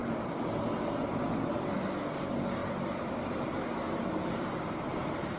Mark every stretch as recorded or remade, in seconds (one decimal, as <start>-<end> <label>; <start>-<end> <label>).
0.0-5.4 recorded